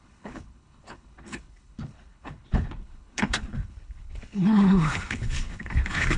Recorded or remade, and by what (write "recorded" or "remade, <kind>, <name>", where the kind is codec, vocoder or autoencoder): remade, codec, HILCodec